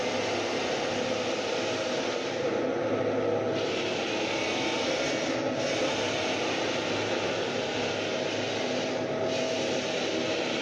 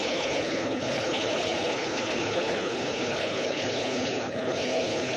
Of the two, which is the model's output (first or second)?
second